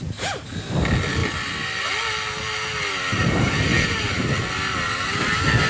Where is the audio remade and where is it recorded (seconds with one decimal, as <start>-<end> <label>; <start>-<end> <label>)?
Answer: 0.0-5.7 recorded

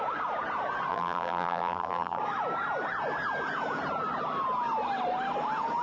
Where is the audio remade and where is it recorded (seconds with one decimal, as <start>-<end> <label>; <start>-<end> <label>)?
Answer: 0.0-0.9 recorded; 0.9-2.2 remade; 2.2-5.8 recorded

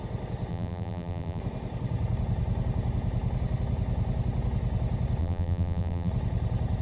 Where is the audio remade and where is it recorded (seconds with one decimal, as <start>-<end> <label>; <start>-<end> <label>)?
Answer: 0.0-0.5 recorded; 0.5-1.4 remade; 1.4-5.2 recorded; 5.2-6.1 remade; 6.1-6.8 recorded

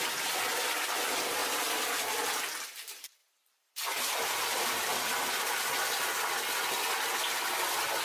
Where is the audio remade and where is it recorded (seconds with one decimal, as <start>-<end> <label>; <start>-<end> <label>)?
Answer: 0.0-1.4 recorded; 1.4-2.4 remade; 2.4-3.2 recorded; 3.2-6.2 remade; 6.2-8.0 recorded